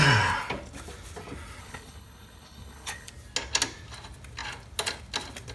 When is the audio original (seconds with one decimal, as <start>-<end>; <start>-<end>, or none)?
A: 0.0-1.6; 3.1-5.5